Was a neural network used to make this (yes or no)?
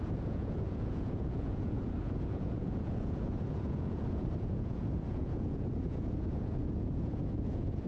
yes